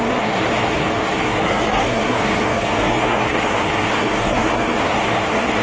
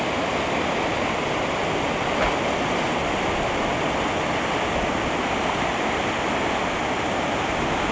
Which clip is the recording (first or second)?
second